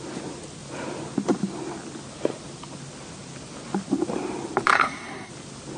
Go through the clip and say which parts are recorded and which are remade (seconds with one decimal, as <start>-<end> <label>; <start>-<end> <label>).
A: 0.0-4.7 recorded; 4.7-5.3 remade; 5.3-5.8 recorded

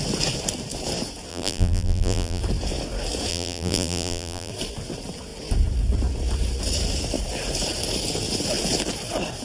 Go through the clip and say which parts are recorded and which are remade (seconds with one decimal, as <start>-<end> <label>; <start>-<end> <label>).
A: 0.0-1.3 recorded; 1.3-2.4 remade; 2.4-3.3 recorded; 3.3-4.5 remade; 4.5-9.4 recorded

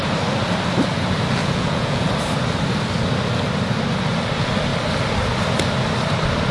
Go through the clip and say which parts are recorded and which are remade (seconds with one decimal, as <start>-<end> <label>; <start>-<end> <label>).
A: 0.0-1.4 recorded; 1.4-2.1 remade; 2.1-6.5 recorded

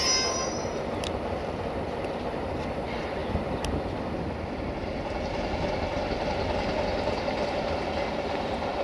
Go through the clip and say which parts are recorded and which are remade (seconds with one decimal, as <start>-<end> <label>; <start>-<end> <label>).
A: 0.0-8.8 recorded

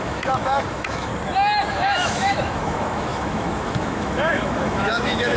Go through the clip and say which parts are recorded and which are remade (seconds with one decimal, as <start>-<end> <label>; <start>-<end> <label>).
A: 0.0-1.1 remade; 1.1-1.7 recorded; 1.7-5.4 remade